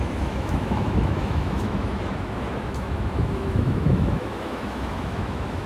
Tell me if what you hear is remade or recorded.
remade